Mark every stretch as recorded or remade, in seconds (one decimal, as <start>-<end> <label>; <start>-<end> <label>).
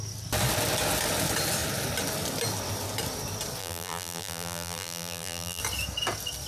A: 0.0-3.6 recorded; 3.6-5.6 remade; 5.6-6.5 recorded